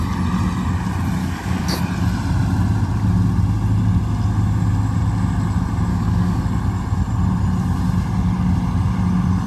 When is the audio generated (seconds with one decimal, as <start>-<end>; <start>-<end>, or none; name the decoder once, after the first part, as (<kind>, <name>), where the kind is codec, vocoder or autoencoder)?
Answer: 1.2-1.8 (codec, DAC); 5.9-6.4